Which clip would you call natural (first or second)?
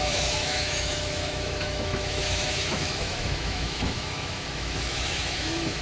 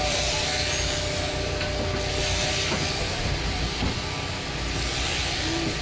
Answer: second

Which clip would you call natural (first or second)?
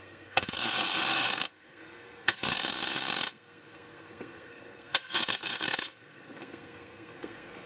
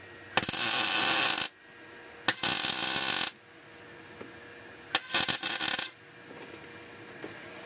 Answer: second